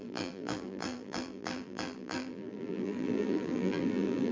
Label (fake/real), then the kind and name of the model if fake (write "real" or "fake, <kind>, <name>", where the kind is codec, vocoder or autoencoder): fake, vocoder, BigVGAN v2